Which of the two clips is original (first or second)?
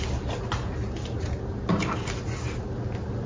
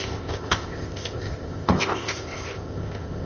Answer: first